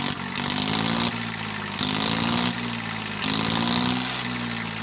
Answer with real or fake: real